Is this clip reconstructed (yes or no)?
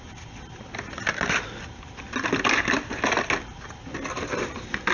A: no